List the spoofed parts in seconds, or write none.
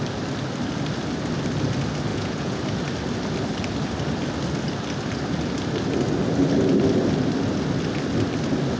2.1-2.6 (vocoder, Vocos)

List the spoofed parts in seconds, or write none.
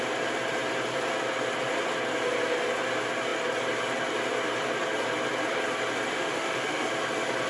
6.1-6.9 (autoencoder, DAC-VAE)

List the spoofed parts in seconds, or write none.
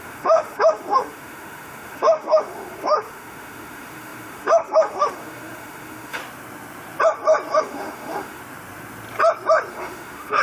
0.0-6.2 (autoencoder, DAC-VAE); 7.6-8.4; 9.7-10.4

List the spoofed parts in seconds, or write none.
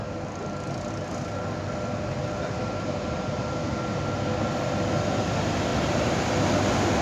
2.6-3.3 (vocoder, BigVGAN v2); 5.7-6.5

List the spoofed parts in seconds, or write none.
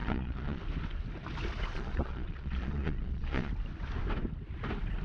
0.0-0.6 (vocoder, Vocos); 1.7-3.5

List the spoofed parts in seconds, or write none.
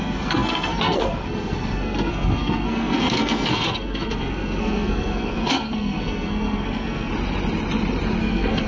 0.0-7.1 (codec, SNAC); 8.2-8.7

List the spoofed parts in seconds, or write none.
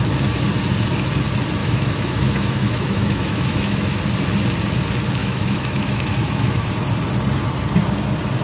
1.6-4.0 (autoencoder, DAC-VAE); 5.2-6.7